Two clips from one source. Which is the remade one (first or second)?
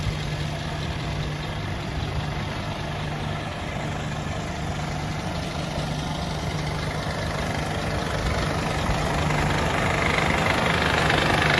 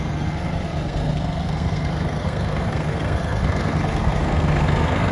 second